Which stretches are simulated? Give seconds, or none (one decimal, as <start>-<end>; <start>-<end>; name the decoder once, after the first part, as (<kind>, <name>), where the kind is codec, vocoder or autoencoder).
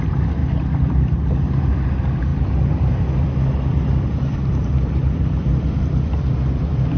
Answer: 0.0-7.0 (vocoder, BigVGAN v2)